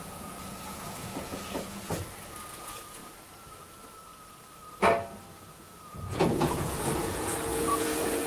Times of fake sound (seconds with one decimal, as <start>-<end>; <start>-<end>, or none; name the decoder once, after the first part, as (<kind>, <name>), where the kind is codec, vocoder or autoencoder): 0.0-1.9 (vocoder, Vocos); 2.5-3.0; 5.4-8.3